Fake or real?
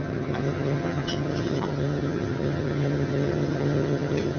fake